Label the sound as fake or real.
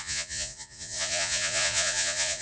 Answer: fake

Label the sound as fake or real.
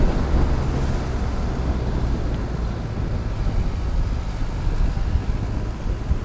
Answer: real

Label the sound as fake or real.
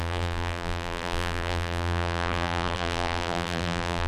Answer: fake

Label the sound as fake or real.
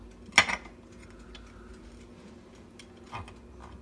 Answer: real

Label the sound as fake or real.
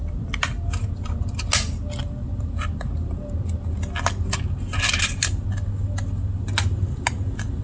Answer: real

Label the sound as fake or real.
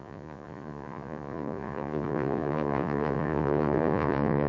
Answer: fake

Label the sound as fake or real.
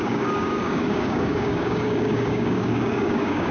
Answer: fake